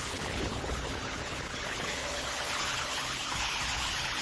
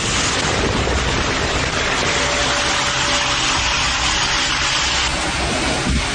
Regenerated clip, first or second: first